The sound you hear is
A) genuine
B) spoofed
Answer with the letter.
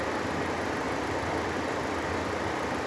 A